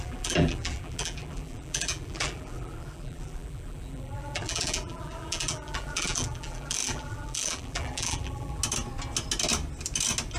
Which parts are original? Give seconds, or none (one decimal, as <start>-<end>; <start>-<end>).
8.6-10.4

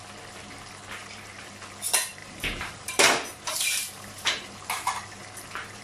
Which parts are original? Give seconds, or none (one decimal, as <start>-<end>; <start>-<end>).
0.0-1.0; 1.5-2.2